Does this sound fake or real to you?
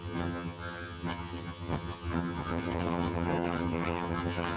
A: fake